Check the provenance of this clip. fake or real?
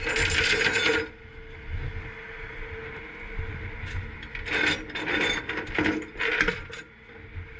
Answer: real